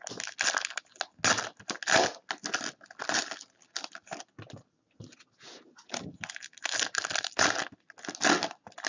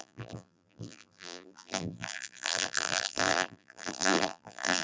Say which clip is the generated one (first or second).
second